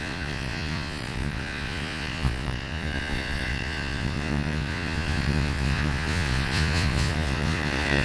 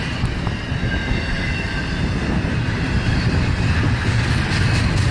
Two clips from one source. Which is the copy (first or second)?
first